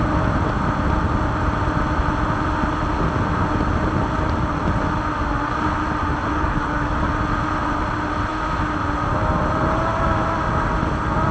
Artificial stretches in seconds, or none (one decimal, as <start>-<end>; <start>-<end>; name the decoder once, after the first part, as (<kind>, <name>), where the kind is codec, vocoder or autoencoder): 6.3-7.1 (codec, DAC)